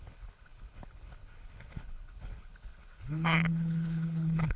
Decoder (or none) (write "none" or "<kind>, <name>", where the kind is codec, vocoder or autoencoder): codec, HILCodec